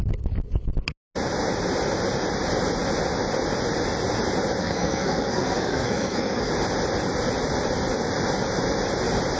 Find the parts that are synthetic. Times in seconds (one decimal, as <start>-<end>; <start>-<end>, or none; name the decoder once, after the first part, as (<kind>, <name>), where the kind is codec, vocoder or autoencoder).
4.6-6.5 (codec, SNAC)

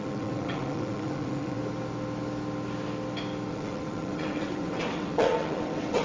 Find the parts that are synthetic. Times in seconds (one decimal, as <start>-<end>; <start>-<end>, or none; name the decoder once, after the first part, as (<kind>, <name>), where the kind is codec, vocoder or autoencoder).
0.0-1.6 (vocoder, WaveNeXt); 3.5-6.0

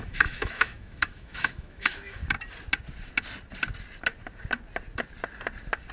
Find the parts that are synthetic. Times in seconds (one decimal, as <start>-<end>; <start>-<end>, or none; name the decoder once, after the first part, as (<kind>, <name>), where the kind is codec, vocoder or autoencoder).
0.0-2.2 (autoencoder, DAC-VAE)

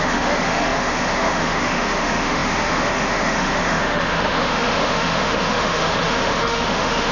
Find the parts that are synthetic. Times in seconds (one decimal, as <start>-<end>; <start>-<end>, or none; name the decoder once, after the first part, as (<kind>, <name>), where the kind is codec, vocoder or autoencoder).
0.0-7.1 (autoencoder, DAC-VAE)

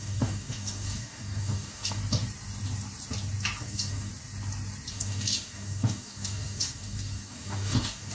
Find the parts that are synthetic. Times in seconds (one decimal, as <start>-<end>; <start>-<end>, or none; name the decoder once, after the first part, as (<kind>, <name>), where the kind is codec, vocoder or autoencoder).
0.0-2.0 (codec, DAC); 3.6-4.1; 4.9-8.1

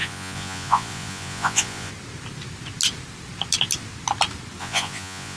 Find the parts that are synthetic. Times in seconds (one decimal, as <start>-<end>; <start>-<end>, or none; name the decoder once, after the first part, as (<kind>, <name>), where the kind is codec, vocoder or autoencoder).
0.0-1.9 (vocoder, Vocos); 4.6-5.4

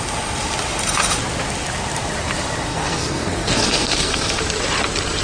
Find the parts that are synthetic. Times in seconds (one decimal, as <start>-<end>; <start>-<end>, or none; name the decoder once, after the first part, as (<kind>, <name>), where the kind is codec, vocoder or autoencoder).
2.7-4.4 (codec, SNAC)